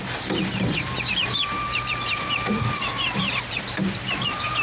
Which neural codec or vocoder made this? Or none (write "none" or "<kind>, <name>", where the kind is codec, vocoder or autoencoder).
vocoder, BigVGAN v2